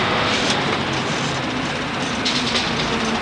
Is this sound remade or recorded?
recorded